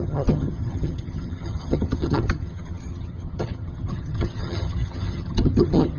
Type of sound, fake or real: fake